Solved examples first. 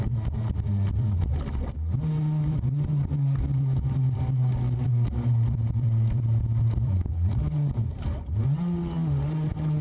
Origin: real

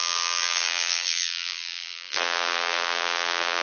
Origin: fake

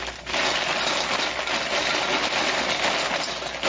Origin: real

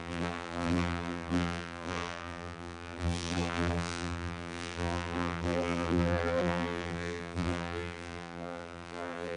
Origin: fake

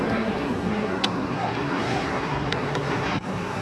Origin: fake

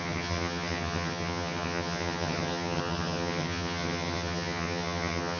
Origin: fake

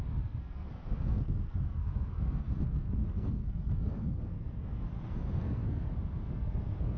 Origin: fake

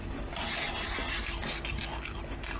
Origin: real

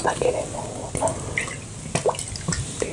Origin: real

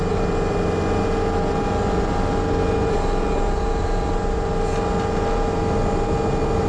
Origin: real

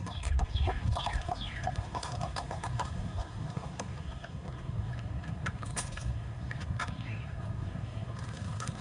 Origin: fake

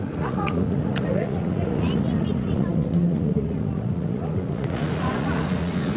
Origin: fake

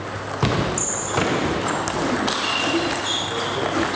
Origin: real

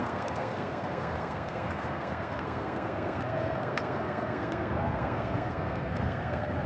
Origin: fake